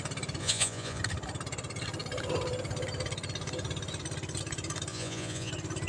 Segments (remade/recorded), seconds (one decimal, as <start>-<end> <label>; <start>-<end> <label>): 0.0-0.4 recorded; 0.4-1.0 remade; 1.0-4.9 recorded; 4.9-5.5 remade; 5.5-5.9 recorded